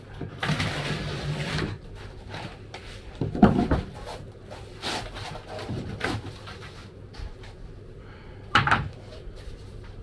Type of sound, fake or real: fake